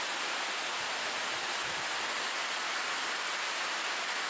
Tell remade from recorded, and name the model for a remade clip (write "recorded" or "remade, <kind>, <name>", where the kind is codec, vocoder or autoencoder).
recorded